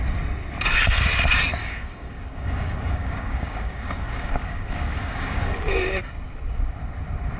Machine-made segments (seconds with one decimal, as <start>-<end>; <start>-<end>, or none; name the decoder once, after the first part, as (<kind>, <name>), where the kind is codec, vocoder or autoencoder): 1.6-6.0 (codec, DAC)